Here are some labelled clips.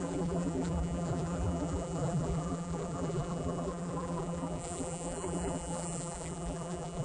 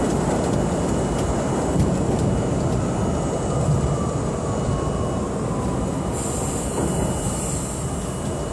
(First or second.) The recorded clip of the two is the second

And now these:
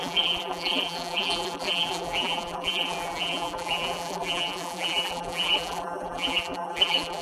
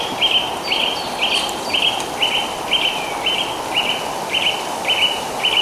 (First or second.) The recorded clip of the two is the second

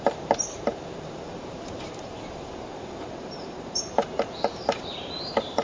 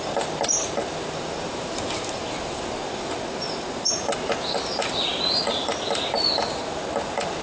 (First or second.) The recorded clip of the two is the second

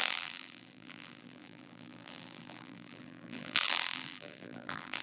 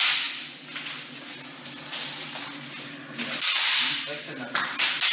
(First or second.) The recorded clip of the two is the second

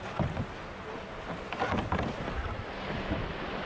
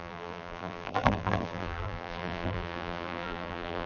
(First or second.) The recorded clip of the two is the first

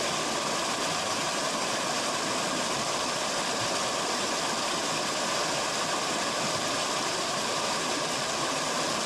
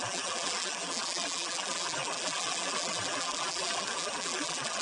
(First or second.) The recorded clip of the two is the first